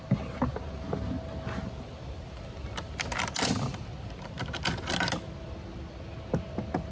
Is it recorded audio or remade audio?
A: recorded